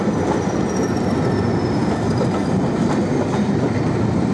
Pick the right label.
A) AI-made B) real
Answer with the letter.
B